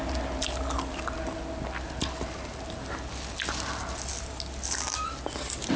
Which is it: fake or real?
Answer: real